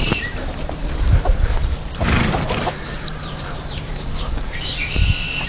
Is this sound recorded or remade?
remade